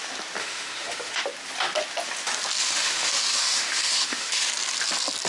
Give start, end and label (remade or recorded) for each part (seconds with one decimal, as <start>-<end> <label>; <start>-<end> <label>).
0.0-0.4 recorded; 0.4-1.2 remade; 1.2-2.6 recorded; 2.6-4.5 remade; 4.5-5.3 recorded